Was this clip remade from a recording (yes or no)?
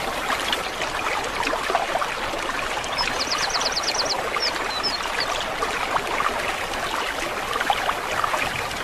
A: no